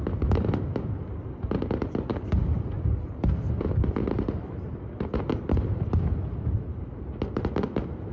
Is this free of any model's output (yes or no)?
yes